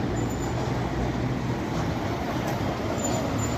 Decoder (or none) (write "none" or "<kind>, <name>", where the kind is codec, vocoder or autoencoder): none